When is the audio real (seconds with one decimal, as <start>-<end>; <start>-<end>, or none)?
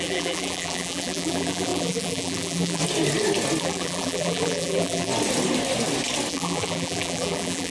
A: 2.8-3.6; 5.1-6.3